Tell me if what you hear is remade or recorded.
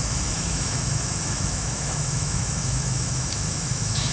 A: remade